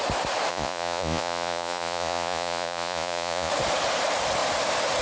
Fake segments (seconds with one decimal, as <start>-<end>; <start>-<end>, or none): 0.5-3.5